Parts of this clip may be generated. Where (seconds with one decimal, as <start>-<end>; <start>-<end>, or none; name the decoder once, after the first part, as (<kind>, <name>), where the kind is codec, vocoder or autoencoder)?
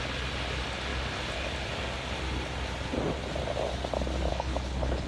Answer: 4.3-5.1 (codec, HILCodec)